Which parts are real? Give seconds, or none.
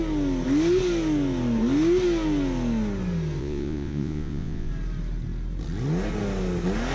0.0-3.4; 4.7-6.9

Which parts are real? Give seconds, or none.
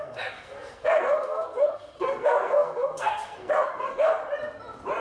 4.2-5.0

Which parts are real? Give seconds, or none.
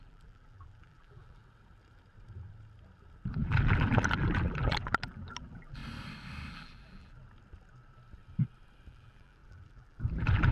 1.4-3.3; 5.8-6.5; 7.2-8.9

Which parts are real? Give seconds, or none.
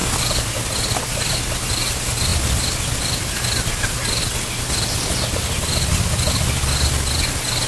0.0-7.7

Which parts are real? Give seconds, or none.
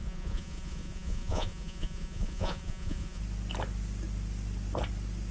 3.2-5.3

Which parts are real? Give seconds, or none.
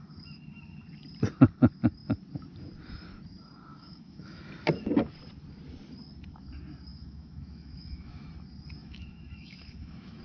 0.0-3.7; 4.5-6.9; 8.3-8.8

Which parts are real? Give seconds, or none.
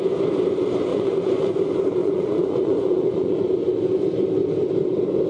0.0-0.9; 1.5-2.0; 3.4-5.3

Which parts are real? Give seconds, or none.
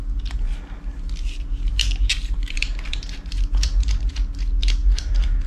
0.0-2.1; 4.1-4.8